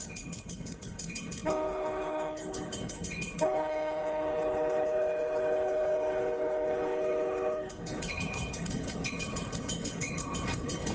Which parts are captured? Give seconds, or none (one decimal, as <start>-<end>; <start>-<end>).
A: none